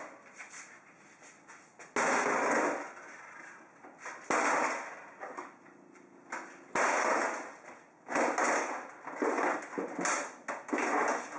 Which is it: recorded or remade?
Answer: recorded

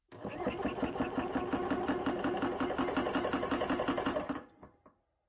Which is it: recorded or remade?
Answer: recorded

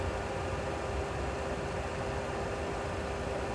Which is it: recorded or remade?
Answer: recorded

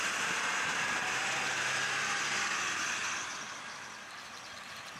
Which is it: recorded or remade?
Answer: remade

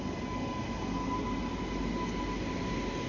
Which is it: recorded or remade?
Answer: recorded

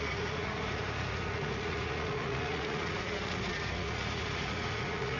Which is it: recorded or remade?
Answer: remade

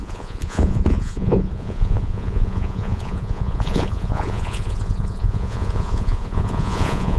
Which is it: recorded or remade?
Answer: remade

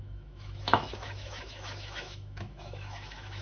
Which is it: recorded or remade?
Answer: remade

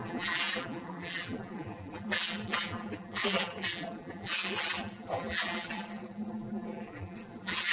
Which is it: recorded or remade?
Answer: remade